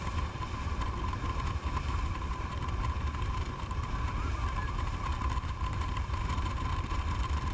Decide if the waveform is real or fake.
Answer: fake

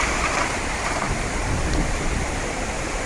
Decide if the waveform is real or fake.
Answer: real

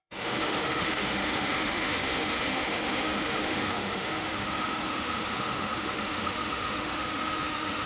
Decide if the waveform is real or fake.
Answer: fake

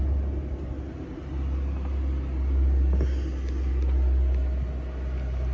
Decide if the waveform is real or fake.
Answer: real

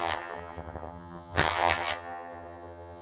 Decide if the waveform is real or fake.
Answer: fake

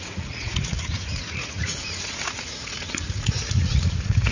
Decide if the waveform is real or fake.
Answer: fake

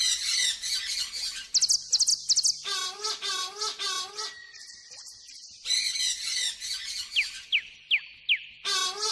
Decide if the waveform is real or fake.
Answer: real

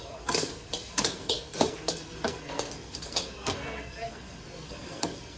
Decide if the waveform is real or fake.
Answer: fake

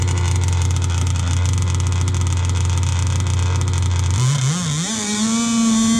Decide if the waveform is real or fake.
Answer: real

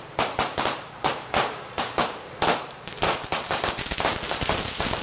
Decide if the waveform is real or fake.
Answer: fake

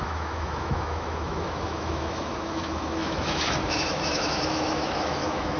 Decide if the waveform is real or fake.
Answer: fake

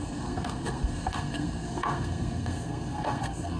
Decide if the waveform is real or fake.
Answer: fake